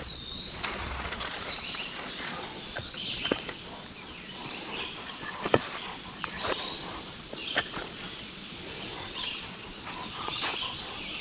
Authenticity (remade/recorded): remade